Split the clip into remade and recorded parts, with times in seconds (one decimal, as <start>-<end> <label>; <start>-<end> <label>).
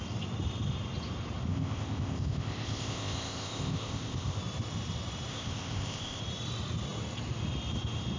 0.0-1.5 recorded; 1.5-4.4 remade; 4.4-5.3 recorded; 5.3-6.2 remade; 6.2-8.2 recorded